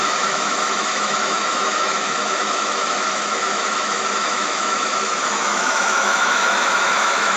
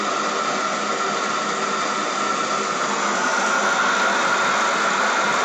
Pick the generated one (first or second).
first